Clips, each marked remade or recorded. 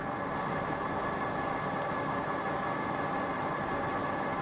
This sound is recorded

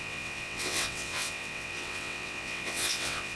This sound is remade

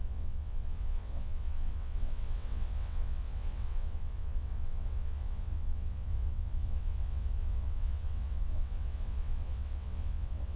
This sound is remade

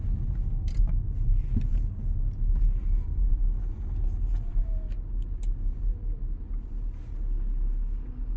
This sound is recorded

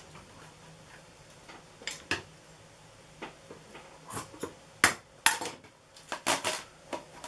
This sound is recorded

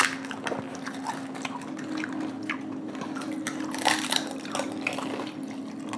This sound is recorded